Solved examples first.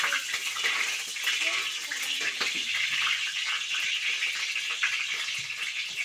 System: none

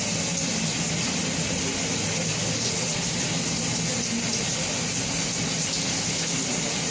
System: none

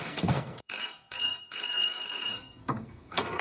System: codec, SNAC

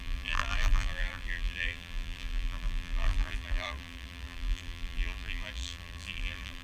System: vocoder, BigVGAN v2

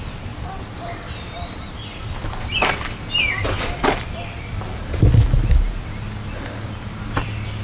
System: none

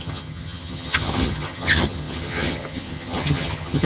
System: vocoder, HiFi-GAN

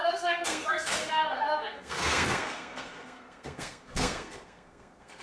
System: codec, SNAC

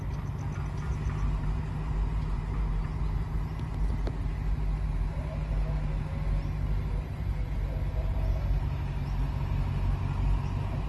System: none